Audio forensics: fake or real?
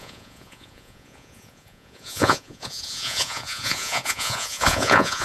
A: fake